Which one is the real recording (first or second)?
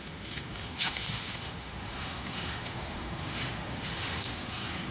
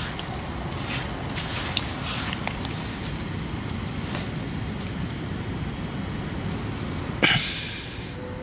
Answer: second